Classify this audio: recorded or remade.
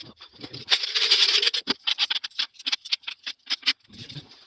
remade